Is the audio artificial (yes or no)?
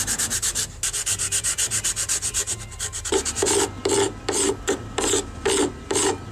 no